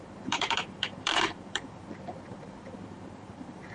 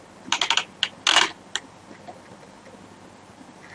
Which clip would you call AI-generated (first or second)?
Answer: first